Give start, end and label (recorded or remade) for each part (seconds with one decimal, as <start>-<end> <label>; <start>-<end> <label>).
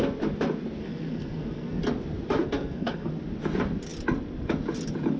0.0-0.8 recorded; 0.8-1.8 remade; 1.8-2.4 recorded; 2.4-3.1 remade; 3.1-5.2 recorded